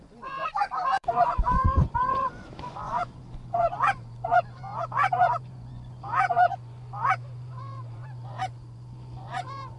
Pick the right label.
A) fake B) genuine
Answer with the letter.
A